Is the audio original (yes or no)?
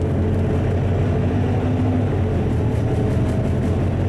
yes